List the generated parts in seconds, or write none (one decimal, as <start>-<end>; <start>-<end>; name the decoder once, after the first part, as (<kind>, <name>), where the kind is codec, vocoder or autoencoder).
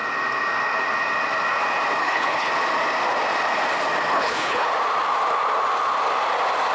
2.0-2.5 (codec, HILCodec); 4.1-4.7